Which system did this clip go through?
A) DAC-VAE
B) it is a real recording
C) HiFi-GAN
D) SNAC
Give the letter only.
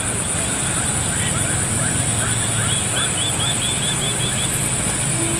B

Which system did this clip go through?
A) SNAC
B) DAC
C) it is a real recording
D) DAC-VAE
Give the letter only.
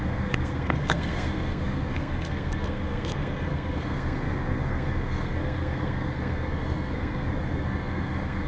A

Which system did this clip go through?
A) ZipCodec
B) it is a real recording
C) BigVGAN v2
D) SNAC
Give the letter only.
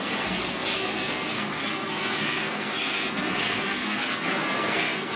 D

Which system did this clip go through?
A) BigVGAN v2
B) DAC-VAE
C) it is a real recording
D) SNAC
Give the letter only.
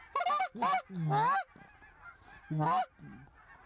C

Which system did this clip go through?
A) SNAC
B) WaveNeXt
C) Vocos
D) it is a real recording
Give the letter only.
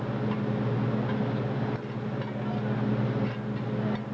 D